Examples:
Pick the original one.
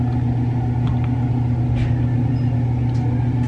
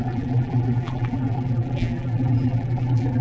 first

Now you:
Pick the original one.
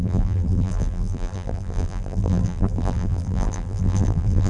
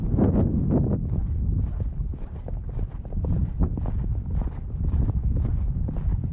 second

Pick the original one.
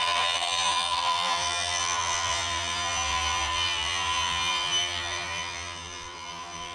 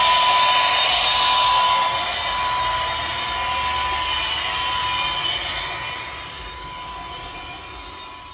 second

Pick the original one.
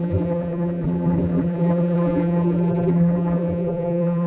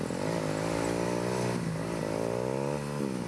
second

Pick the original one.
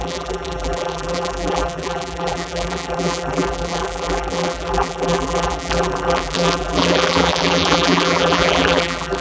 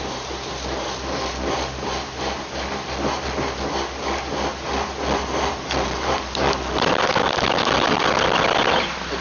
second